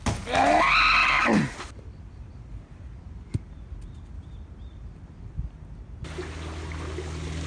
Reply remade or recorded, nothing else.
recorded